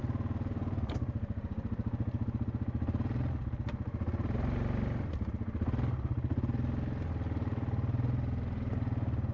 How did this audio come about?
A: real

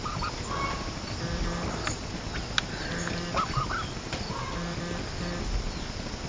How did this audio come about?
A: real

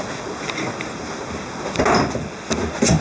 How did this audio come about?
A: real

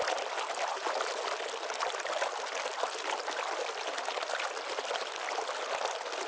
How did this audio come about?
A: real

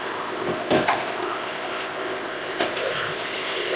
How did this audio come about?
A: fake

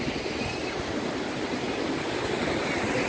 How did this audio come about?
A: real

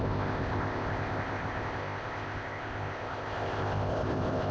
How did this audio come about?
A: fake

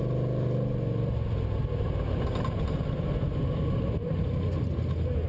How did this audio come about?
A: real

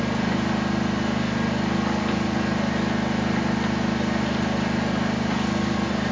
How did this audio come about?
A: real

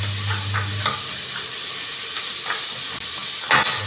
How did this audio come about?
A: real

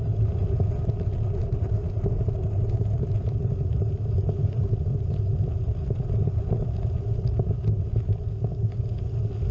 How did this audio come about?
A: real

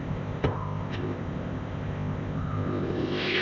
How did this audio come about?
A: fake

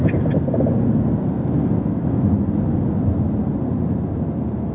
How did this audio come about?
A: real